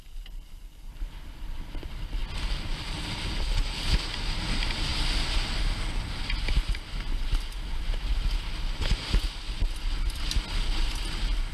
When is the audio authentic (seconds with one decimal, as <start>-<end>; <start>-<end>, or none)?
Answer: 0.0-11.5